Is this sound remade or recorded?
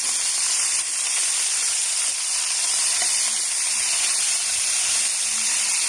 recorded